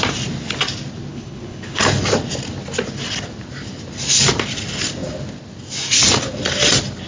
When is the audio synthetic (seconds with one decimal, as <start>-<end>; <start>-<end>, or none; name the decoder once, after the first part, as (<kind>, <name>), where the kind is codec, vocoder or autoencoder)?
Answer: 1.1-1.8 (codec, HILCodec)